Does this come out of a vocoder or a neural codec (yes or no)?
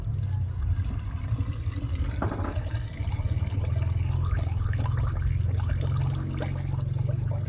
no